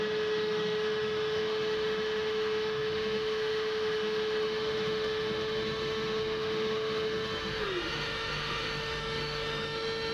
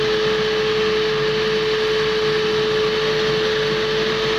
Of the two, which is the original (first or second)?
second